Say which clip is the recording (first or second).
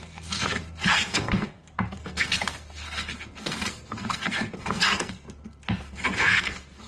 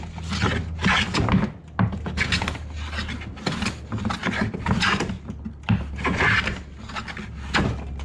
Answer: second